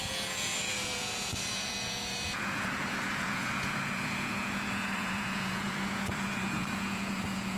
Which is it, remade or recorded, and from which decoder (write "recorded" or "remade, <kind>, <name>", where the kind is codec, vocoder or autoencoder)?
remade, vocoder, Vocos